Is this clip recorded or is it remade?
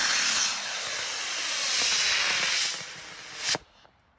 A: recorded